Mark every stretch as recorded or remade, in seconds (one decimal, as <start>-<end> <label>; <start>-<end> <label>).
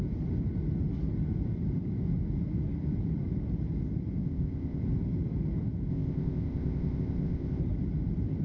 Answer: 0.0-4.2 recorded; 4.2-4.8 remade; 4.8-5.9 recorded; 5.9-7.6 remade; 7.6-8.4 recorded